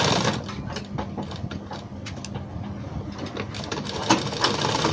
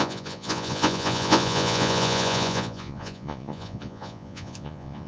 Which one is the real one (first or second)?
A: first